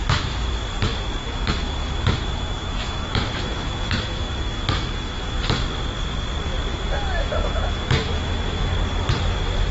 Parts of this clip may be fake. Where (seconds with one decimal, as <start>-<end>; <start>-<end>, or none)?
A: 0.0-0.5; 1.2-5.4; 6.7-8.7